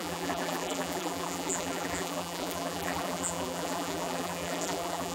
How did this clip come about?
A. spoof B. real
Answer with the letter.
A